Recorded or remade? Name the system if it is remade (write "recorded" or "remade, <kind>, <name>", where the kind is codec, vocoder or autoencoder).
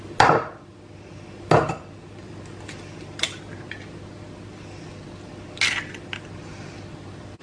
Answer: recorded